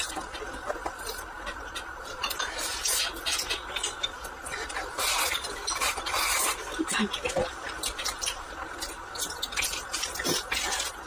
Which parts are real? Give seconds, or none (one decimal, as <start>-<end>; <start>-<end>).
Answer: 0.0-1.9; 2.7-4.4; 8.5-11.1